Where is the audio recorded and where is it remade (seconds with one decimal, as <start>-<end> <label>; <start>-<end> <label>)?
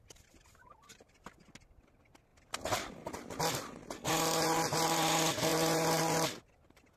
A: 0.0-7.0 recorded